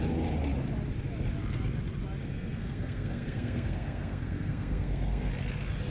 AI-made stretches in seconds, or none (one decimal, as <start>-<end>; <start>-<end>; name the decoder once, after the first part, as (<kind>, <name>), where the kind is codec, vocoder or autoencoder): 2.2-5.3 (codec, SNAC)